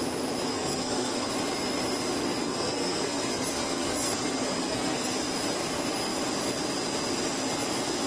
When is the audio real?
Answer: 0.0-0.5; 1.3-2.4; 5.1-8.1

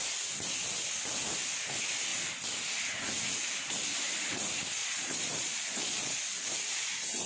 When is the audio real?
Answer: 0.0-4.8; 6.2-7.3